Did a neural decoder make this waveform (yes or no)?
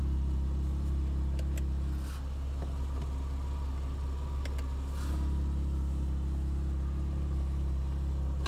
no